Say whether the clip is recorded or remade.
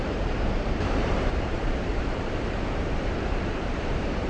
remade